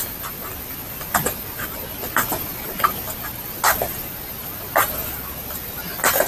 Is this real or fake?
real